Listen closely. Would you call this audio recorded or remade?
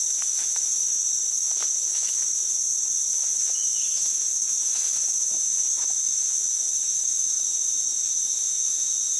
remade